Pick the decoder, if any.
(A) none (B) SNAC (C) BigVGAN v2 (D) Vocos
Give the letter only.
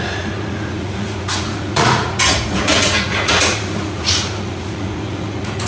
D